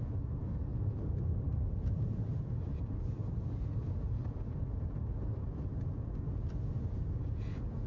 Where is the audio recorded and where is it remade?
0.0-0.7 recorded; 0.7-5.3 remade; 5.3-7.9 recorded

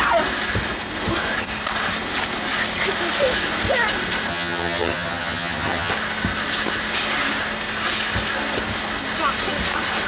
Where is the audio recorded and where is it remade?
0.0-4.3 recorded; 4.3-5.9 remade; 5.9-10.1 recorded